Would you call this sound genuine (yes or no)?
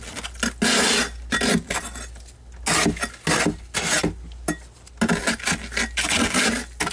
yes